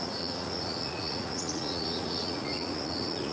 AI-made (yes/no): yes